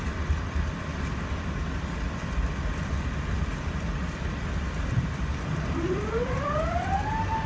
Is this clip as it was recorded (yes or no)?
no